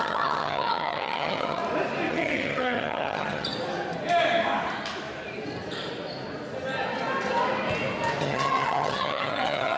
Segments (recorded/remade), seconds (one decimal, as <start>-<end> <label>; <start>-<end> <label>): 0.0-1.6 remade; 1.6-2.1 recorded; 2.1-3.5 remade; 3.5-8.2 recorded; 8.2-9.8 remade